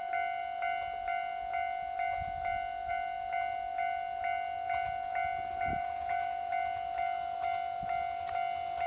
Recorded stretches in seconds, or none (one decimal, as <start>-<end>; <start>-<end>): 0.0-5.7; 6.5-8.9